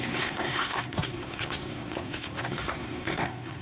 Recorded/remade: remade